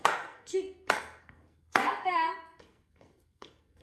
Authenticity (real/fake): fake